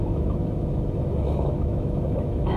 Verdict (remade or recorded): remade